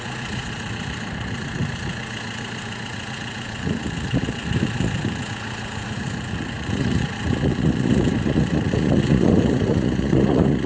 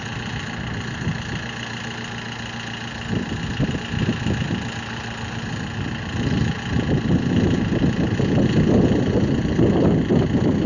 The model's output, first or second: first